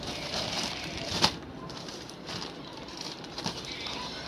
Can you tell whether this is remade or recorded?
remade